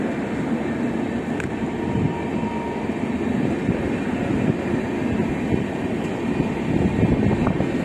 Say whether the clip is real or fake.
real